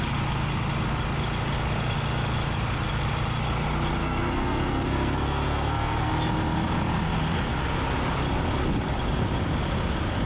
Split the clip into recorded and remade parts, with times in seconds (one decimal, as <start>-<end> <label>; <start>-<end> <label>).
0.0-4.0 recorded; 4.0-6.1 remade; 6.1-10.3 recorded